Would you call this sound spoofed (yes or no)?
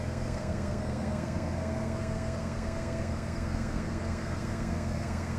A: yes